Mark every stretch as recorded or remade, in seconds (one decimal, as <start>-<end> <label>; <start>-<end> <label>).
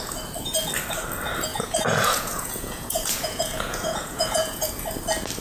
0.0-1.5 recorded; 1.5-4.7 remade; 4.7-5.4 recorded